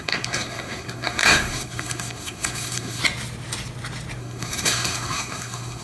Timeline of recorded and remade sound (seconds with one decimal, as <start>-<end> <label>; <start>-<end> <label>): 0.0-3.0 remade; 3.0-4.2 recorded; 4.2-5.8 remade